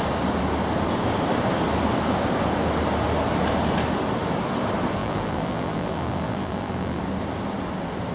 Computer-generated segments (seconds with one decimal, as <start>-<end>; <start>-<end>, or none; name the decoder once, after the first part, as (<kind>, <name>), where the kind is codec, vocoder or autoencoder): 5.0-7.0 (vocoder, BigVGAN v2)

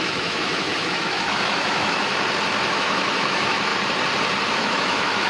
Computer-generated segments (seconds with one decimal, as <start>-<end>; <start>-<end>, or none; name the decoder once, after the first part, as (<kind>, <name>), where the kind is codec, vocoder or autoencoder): 0.0-2.1 (autoencoder, DAC-VAE); 2.7-3.7; 4.5-5.3

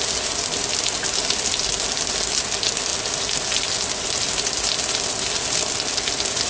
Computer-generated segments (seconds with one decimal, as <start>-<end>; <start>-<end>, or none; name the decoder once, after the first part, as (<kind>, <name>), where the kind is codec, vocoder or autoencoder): none

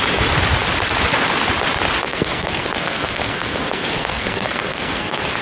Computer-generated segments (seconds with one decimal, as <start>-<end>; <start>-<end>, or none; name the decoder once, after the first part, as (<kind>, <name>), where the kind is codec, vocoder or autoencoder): 2.0-5.4 (codec, SNAC)

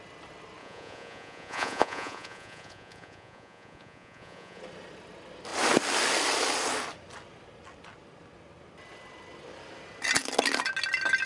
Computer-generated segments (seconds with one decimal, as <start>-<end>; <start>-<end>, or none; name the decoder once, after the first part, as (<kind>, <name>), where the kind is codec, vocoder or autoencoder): 0.6-4.6 (vocoder, Vocos)